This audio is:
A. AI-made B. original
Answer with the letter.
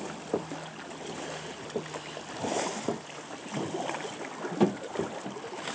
B